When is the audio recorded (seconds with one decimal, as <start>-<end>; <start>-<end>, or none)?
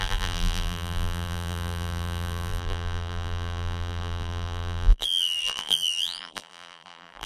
none